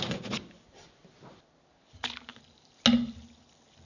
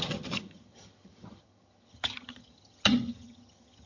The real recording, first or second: first